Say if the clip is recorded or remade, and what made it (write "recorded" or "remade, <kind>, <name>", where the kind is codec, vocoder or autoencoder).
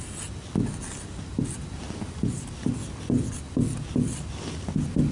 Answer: recorded